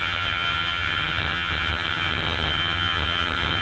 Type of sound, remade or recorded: remade